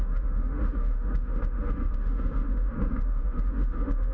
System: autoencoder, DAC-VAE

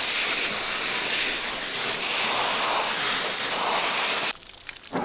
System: none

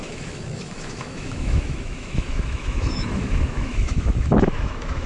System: autoencoder, DAC-VAE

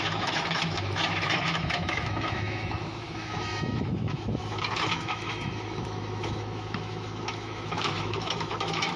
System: autoencoder, DAC-VAE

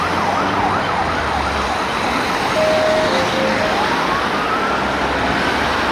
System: none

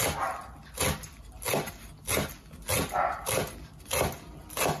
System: none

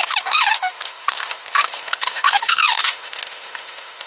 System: autoencoder, DAC-VAE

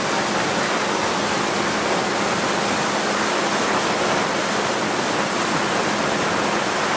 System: none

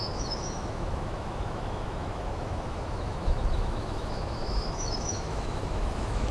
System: autoencoder, DAC-VAE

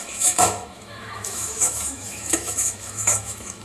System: autoencoder, DAC-VAE